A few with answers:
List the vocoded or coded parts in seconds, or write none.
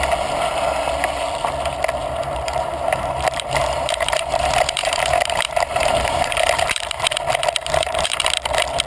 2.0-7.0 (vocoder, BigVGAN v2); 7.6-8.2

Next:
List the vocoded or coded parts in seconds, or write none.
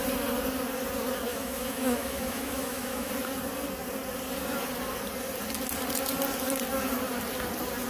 1.3-3.1 (autoencoder, DAC-VAE)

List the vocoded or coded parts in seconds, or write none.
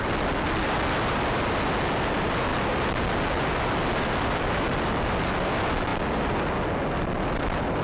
none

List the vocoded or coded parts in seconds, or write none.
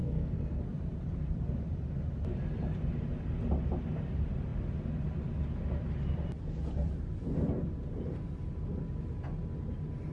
0.0-0.6 (codec, SNAC)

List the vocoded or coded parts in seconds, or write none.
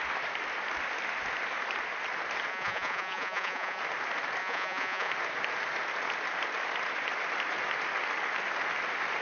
2.5-3.8 (vocoder, Vocos); 4.4-5.1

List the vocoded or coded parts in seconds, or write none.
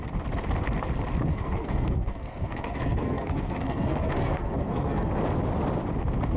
1.3-5.1 (codec, SNAC)